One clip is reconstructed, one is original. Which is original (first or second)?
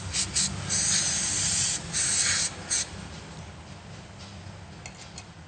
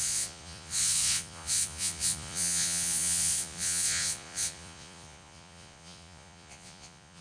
first